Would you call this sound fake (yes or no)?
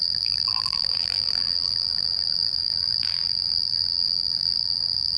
yes